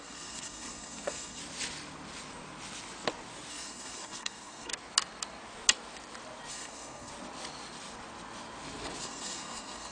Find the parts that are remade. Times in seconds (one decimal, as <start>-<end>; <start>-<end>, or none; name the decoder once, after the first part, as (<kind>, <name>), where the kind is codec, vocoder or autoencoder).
0.0-1.4 (codec, SNAC); 3.5-4.7; 6.5-7.1; 9.0-9.9